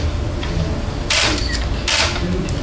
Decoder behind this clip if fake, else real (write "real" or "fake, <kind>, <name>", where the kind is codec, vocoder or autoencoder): real